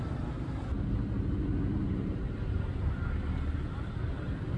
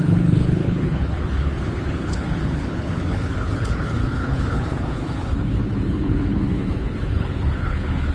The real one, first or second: first